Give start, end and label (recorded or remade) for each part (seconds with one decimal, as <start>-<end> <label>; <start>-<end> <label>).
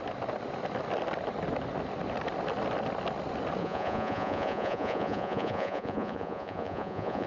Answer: 0.0-3.6 recorded; 3.6-7.3 remade